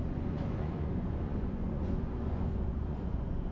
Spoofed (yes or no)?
yes